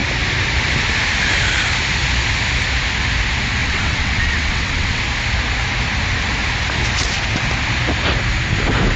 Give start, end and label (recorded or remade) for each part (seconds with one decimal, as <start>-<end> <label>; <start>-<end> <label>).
0.0-3.6 recorded; 3.6-5.0 remade; 5.0-9.0 recorded

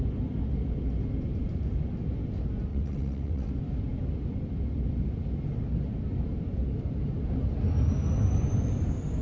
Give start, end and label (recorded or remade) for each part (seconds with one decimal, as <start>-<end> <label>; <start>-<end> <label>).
0.0-2.7 recorded; 2.7-3.5 remade; 3.5-9.2 recorded

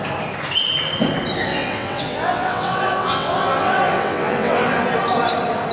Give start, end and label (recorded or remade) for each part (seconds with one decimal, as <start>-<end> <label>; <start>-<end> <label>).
0.0-1.5 recorded; 1.5-4.8 remade; 4.8-5.7 recorded

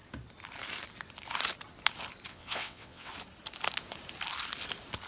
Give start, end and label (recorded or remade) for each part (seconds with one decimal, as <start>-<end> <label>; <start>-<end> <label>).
0.0-2.3 recorded; 2.3-3.1 remade; 3.1-5.1 recorded

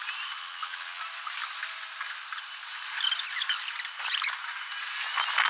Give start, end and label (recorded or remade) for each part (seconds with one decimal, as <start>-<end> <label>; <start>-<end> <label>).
0.0-0.4 recorded; 0.4-1.0 remade; 1.0-5.5 recorded

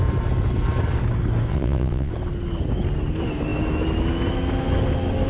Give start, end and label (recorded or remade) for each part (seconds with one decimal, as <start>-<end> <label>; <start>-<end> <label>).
0.0-1.5 recorded; 1.5-2.1 remade; 2.1-5.3 recorded

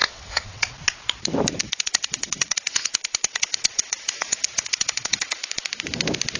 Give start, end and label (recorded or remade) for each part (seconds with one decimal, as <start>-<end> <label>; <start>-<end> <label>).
0.0-0.6 remade; 0.6-1.6 recorded; 1.6-5.4 remade; 5.4-6.4 recorded